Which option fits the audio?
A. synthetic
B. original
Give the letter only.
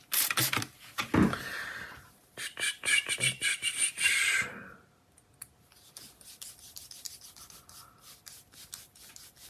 B